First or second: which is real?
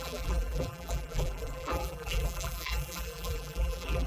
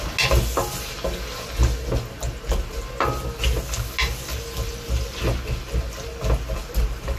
second